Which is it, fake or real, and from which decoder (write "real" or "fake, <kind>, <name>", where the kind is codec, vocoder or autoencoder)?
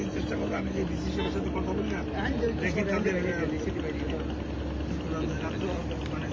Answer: real